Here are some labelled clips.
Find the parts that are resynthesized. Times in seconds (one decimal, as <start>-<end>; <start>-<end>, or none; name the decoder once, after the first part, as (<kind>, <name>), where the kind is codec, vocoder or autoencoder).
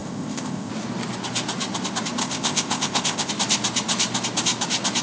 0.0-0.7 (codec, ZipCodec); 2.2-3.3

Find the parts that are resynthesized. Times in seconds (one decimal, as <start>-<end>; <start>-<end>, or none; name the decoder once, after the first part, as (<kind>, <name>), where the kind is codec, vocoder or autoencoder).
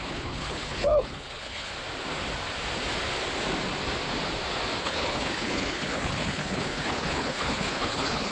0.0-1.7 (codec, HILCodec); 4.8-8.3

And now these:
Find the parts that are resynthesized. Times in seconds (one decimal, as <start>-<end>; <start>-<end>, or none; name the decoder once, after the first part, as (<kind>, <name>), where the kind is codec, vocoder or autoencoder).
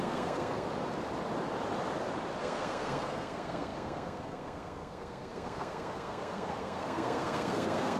0.0-0.7 (codec, SNAC); 2.4-8.0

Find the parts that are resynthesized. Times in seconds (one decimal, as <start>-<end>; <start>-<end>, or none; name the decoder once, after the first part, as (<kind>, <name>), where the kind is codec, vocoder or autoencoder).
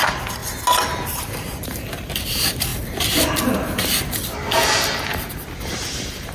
0.0-0.4 (vocoder, BigVGAN v2); 1.1-2.7; 5.3-6.3